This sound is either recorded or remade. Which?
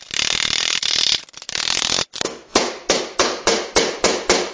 recorded